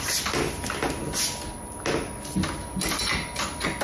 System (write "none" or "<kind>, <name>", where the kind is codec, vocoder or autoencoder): none